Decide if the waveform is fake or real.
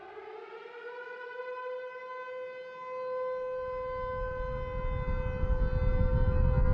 real